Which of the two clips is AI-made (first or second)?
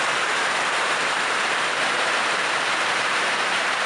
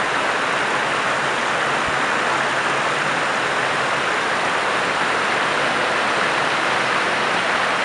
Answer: first